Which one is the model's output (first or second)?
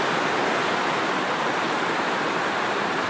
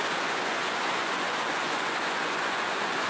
second